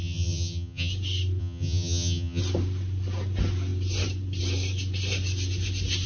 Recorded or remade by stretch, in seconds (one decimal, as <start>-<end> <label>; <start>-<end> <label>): 0.0-0.9 remade; 0.9-1.4 recorded; 1.4-2.4 remade; 2.4-6.1 recorded